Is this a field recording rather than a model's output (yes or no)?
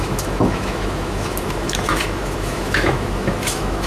no